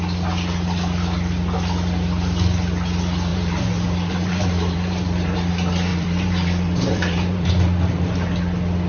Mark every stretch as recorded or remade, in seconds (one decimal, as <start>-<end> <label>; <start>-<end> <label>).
0.0-3.3 recorded; 3.3-5.5 remade; 5.5-5.9 recorded; 5.9-7.5 remade; 7.5-8.9 recorded